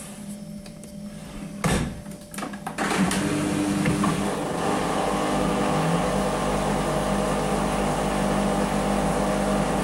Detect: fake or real real